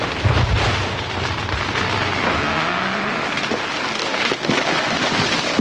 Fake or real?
real